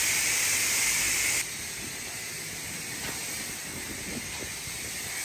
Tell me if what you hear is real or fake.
real